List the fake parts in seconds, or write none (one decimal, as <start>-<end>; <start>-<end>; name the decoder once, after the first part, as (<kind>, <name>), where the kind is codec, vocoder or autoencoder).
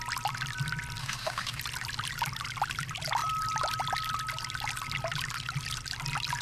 1.0-1.6 (autoencoder, DAC-VAE)